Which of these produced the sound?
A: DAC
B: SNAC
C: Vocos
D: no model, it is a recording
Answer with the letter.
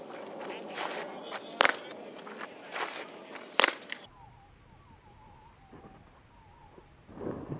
D